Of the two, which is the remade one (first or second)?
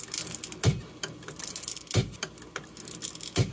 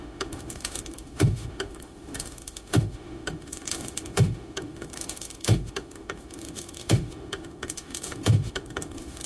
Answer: second